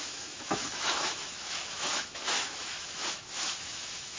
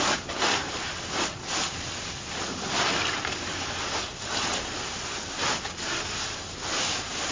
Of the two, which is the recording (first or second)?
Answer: second